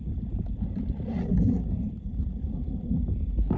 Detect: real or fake fake